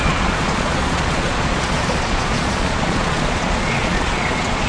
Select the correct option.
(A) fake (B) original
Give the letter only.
A